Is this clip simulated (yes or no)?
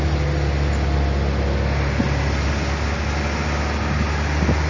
no